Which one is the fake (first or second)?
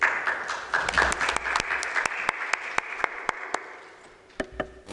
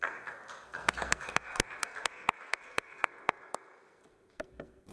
second